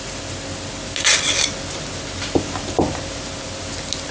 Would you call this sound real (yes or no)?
yes